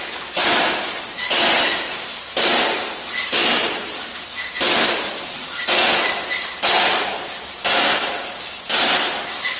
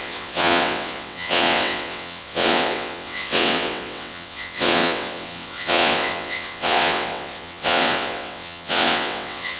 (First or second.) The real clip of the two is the first